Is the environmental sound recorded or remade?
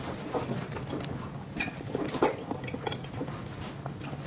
recorded